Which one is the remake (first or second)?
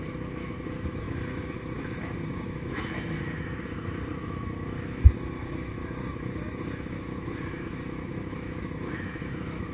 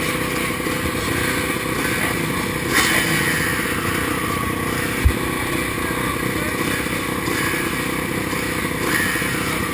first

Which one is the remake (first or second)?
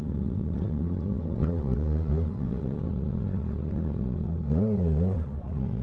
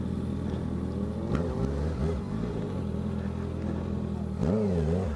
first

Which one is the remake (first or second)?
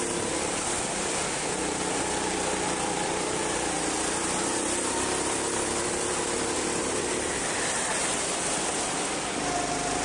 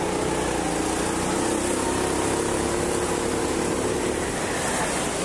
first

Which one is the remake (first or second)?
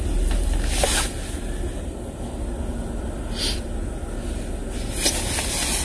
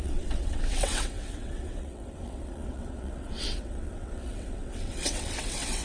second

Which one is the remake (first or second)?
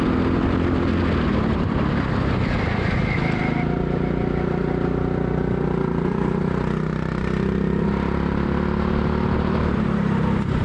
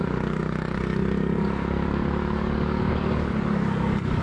second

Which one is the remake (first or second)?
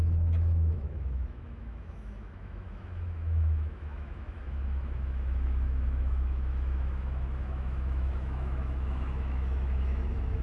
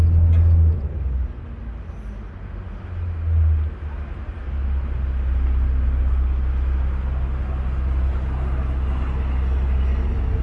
first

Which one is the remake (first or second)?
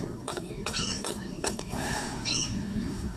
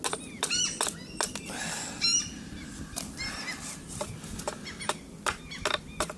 first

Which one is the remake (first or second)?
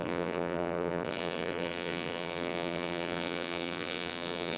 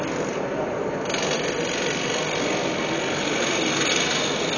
first